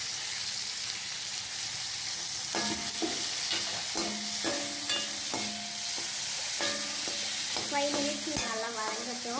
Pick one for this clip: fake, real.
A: real